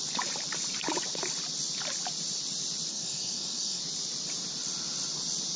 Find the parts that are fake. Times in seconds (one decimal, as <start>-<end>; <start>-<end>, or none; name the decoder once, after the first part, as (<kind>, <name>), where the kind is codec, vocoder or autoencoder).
2.9-3.8 (codec, SNAC)